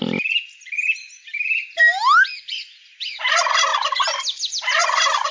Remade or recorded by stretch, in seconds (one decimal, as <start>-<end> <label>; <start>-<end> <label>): 0.0-5.3 recorded